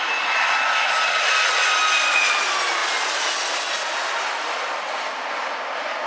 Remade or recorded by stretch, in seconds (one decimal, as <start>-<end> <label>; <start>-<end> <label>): 0.0-6.1 recorded